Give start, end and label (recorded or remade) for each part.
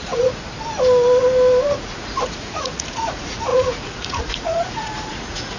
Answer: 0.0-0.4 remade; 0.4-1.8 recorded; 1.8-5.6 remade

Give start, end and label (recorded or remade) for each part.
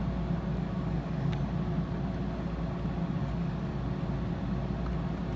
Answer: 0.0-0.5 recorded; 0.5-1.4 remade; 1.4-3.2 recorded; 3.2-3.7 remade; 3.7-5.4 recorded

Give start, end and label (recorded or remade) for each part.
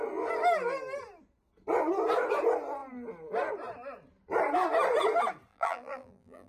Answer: 0.0-5.5 recorded; 5.5-6.5 remade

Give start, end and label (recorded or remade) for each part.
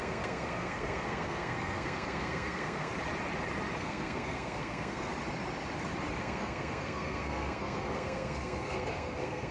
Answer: 0.0-2.9 remade; 2.9-3.8 recorded; 3.8-5.1 remade; 5.1-6.2 recorded; 6.2-9.5 remade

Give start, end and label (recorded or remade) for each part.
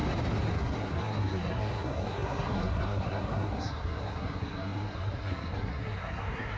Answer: 0.0-0.5 recorded; 0.5-6.6 remade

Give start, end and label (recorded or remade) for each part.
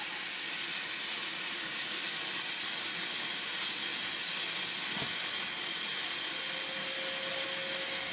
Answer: 0.0-1.2 recorded; 1.2-1.8 remade; 1.8-8.1 recorded